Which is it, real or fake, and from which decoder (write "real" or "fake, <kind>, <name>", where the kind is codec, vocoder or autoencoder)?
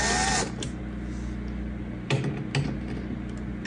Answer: real